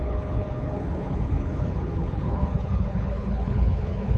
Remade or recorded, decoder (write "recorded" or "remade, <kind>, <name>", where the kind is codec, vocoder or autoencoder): remade, codec, HILCodec